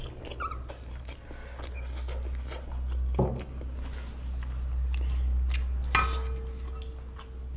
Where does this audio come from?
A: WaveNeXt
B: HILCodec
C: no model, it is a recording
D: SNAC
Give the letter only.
C